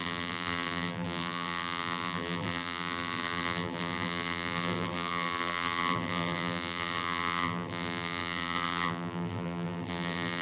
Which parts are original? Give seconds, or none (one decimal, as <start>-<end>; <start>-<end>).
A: none